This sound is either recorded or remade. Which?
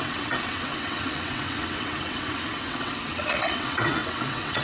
remade